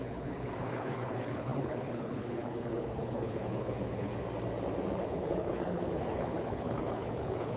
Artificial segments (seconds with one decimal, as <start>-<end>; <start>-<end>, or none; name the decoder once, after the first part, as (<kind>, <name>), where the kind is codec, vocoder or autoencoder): 0.0-4.1 (codec, HILCodec); 5.0-7.6